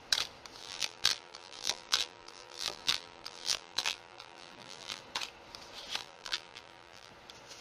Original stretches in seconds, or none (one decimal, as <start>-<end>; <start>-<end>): 0.0-0.6; 5.0-6.0; 7.1-7.6